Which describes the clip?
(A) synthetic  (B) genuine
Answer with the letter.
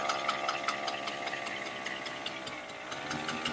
B